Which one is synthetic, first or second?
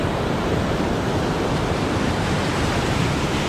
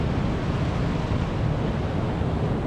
first